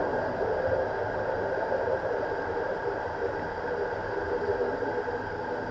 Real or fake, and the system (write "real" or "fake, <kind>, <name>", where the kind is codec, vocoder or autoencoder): real